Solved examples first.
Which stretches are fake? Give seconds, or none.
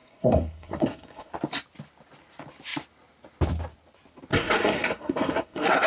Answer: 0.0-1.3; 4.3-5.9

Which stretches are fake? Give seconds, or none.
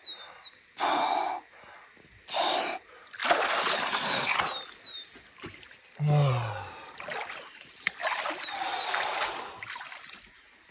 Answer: none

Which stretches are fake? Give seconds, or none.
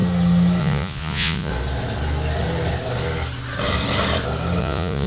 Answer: 0.6-1.5; 4.6-5.1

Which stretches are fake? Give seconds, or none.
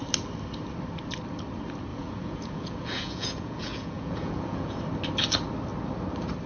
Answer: 1.9-4.8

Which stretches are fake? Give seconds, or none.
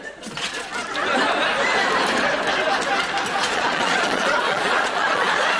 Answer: 0.0-0.7; 3.3-5.6